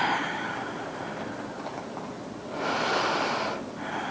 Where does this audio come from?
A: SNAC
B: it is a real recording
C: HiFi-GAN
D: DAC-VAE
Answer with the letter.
B